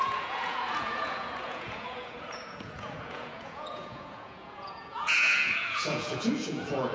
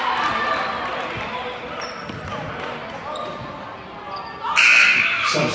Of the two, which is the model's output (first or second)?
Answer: first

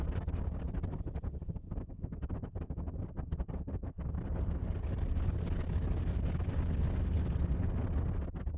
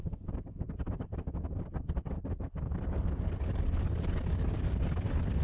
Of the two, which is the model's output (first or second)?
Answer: second